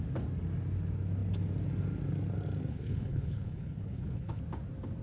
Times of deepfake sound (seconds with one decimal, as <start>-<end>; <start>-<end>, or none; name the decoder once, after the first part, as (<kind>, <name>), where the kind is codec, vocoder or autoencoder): 2.7-4.4 (codec, HILCodec)